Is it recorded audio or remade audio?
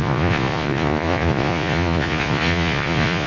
remade